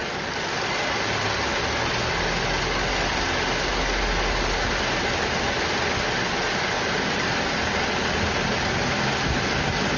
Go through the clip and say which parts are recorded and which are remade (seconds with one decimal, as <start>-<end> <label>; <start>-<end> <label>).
0.0-10.0 recorded